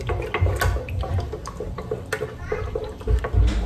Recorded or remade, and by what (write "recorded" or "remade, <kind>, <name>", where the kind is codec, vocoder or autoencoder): recorded